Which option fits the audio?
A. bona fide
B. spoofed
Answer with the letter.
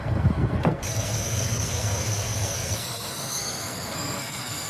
B